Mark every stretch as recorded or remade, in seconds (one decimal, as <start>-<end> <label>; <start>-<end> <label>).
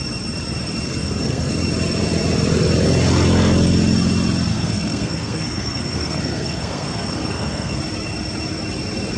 0.0-1.0 recorded; 1.0-1.5 remade; 1.5-4.5 recorded; 4.5-7.8 remade; 7.8-9.2 recorded